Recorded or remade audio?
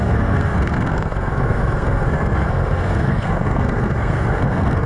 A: remade